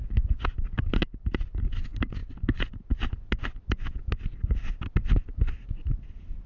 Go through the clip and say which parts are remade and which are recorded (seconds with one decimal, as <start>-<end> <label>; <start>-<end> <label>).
0.0-6.5 recorded